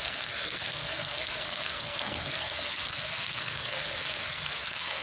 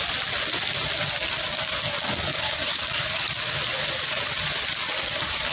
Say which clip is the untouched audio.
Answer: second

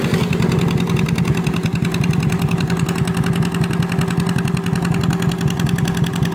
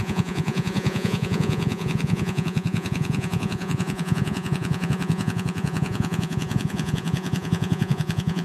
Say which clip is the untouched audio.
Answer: first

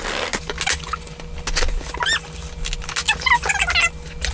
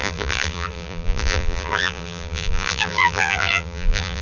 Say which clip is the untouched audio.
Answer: first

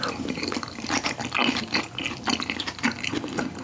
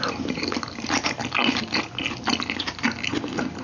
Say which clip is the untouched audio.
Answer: second